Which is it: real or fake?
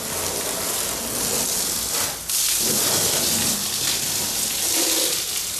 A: real